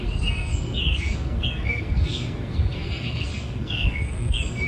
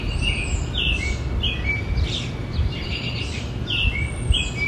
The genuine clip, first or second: second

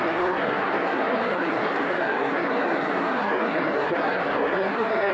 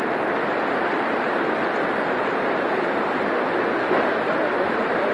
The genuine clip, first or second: second